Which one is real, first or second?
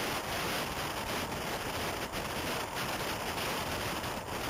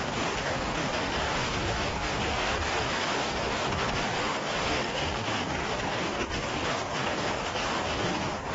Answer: first